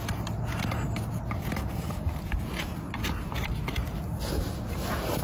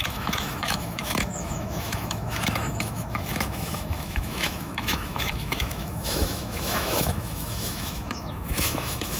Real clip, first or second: first